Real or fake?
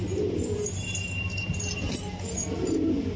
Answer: real